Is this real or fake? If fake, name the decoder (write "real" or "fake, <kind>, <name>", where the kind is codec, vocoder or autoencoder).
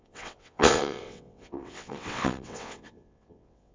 fake, vocoder, WaveNeXt